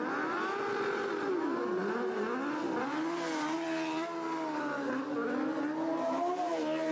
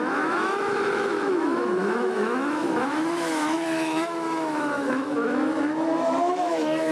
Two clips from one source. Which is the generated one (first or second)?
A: second